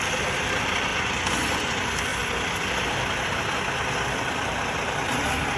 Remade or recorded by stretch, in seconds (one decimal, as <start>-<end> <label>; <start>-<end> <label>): 0.0-0.9 recorded; 0.9-1.7 remade; 1.7-5.6 recorded